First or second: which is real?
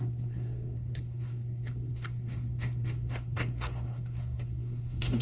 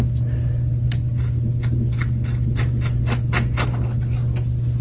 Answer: second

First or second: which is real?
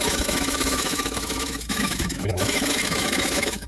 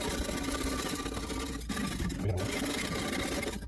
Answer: second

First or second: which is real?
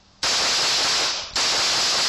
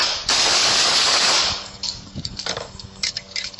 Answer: first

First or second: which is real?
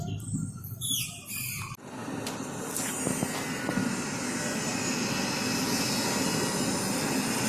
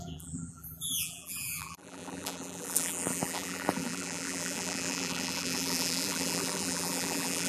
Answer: first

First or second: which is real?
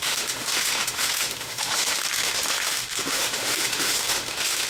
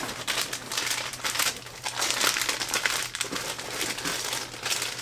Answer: second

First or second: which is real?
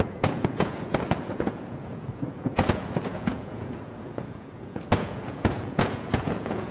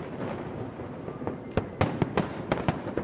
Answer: second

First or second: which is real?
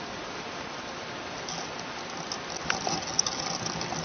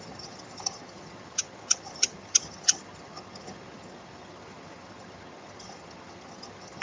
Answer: first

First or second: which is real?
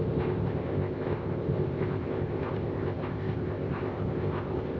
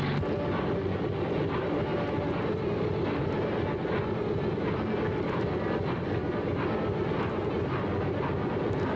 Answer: second